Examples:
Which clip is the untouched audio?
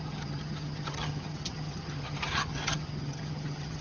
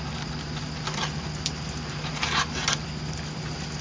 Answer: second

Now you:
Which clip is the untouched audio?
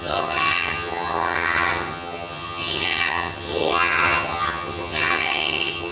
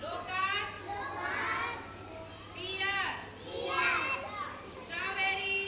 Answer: second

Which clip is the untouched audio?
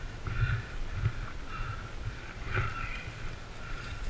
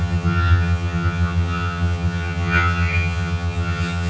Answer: first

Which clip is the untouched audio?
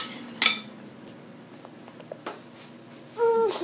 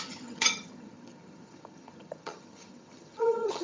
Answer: first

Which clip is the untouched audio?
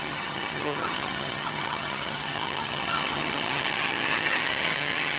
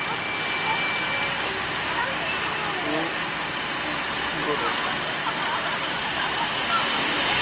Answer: second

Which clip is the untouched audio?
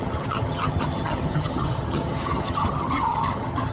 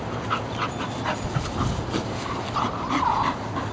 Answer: second